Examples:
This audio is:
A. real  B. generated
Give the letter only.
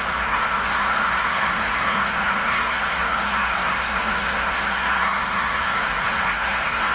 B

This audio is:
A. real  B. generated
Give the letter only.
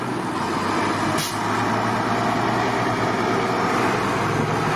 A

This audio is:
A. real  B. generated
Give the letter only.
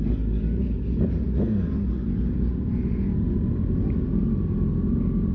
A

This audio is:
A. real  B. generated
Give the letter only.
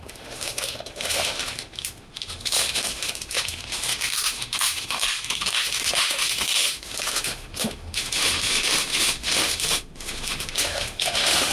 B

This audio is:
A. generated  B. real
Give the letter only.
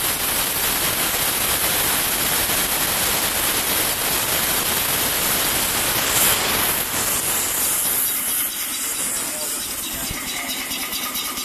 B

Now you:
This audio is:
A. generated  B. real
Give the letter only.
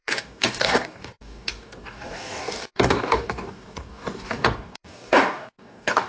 A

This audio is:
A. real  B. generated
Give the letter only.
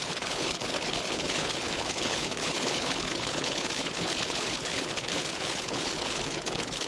B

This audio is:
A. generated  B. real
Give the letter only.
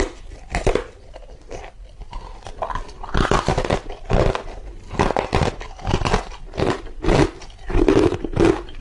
B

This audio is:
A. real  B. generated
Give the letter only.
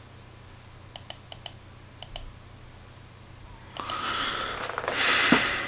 A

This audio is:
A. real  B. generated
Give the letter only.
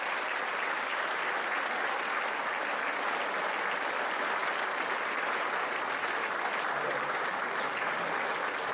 A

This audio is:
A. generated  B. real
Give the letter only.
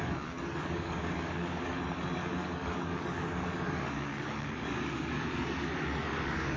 A